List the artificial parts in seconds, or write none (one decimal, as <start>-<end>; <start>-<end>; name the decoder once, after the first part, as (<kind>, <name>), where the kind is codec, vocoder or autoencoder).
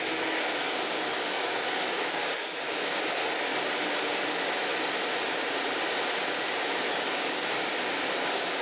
0.0-3.5 (codec, DAC); 6.9-8.6